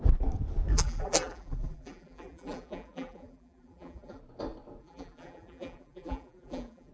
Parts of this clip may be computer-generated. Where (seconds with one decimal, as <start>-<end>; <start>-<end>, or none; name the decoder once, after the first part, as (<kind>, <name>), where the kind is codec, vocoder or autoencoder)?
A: 0.7-4.2 (vocoder, BigVGAN v2); 4.8-6.9